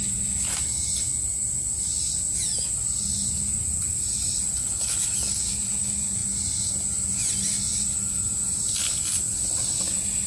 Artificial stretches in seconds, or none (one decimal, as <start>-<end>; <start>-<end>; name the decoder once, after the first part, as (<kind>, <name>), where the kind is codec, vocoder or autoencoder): none